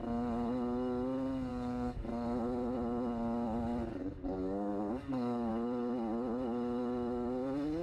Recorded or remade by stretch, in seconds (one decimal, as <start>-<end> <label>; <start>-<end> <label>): 0.0-1.5 recorded; 1.5-2.1 remade; 2.1-4.0 recorded; 4.0-5.5 remade; 5.5-7.8 recorded